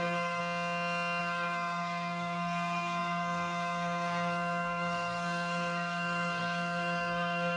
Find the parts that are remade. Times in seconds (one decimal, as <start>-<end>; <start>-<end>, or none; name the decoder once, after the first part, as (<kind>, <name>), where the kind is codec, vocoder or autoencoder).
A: 0.0-0.4 (codec, SNAC); 1.2-7.6